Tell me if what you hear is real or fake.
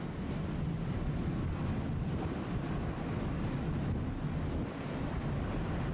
real